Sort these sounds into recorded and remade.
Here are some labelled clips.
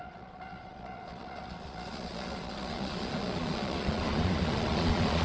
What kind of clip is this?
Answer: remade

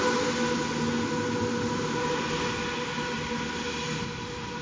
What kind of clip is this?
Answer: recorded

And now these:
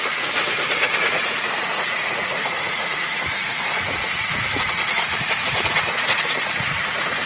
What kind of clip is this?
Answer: remade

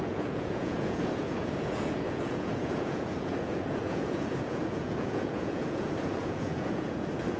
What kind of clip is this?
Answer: remade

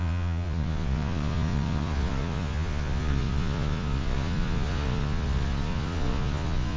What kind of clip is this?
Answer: remade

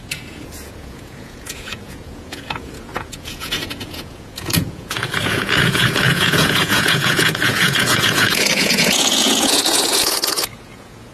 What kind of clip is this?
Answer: remade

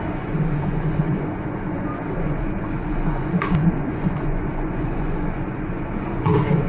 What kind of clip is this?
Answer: remade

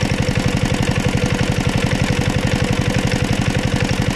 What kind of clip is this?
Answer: recorded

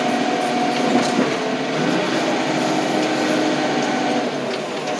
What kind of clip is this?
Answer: recorded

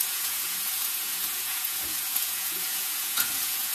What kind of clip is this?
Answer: remade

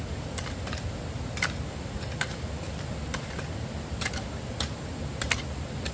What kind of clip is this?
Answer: recorded